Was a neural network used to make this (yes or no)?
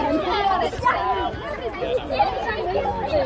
no